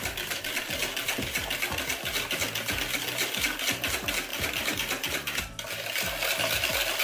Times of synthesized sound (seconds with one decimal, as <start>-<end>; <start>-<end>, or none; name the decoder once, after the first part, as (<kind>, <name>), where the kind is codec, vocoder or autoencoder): 4.3-5.4 (vocoder, BigVGAN v2)

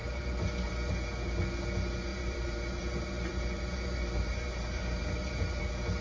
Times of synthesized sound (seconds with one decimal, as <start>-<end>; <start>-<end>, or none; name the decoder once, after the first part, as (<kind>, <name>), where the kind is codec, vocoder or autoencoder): 0.0-0.9 (vocoder, BigVGAN v2); 2.1-5.6

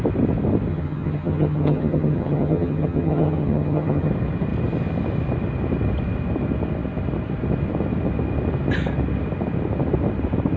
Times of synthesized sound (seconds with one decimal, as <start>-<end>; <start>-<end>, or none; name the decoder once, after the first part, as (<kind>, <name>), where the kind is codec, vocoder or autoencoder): 0.7-4.1 (vocoder, HiFi-GAN)

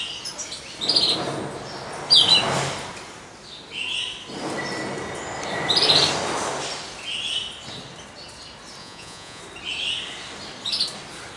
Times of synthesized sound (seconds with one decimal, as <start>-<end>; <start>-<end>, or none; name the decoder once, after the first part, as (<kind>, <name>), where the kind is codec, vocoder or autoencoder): 8.8-9.4 (vocoder, Vocos)

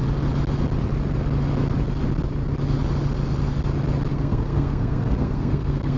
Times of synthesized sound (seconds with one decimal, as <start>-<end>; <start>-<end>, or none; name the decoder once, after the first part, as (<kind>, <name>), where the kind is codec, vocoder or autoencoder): 4.1-6.0 (codec, SNAC)

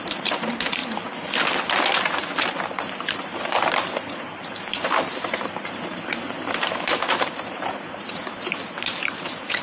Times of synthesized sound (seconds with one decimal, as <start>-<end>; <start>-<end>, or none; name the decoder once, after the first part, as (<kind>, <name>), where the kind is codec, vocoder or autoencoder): 0.0-0.8 (vocoder, BigVGAN v2); 2.8-9.6

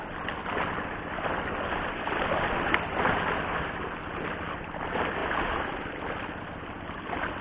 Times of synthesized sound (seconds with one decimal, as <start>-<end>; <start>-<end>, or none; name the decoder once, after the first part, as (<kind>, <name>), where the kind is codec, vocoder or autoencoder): none

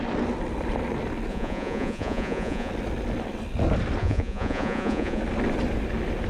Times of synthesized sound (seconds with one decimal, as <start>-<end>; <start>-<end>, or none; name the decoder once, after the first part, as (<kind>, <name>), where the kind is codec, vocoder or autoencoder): 1.3-2.7 (vocoder, Vocos); 4.0-5.2